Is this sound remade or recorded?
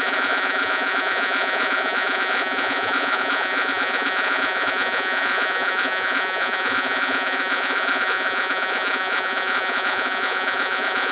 remade